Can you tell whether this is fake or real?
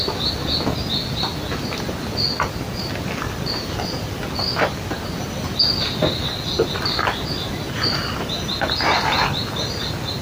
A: real